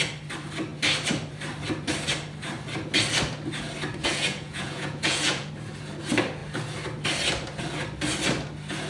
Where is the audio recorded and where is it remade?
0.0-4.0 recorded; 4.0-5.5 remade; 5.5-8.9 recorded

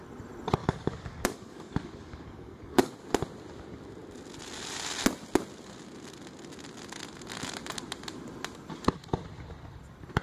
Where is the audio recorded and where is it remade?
0.0-0.6 recorded; 0.6-2.9 remade; 2.9-10.2 recorded

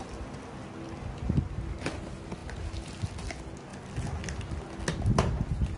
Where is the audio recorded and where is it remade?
0.0-5.8 recorded

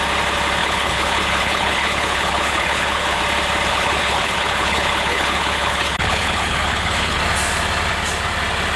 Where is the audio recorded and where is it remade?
0.0-0.6 recorded; 0.6-3.2 remade; 3.2-3.7 recorded; 3.7-7.2 remade; 7.2-8.8 recorded

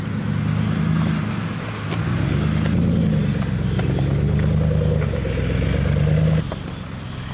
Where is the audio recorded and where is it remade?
0.0-7.3 recorded

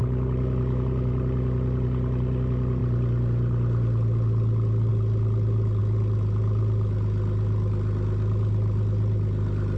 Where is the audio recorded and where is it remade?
0.0-9.8 recorded

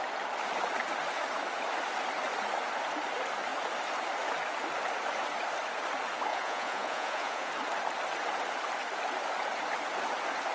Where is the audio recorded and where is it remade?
0.0-6.3 recorded; 6.3-7.5 remade; 7.5-10.5 recorded